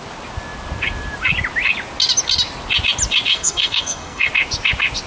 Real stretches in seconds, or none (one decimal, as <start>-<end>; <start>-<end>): 0.0-3.3; 4.3-5.1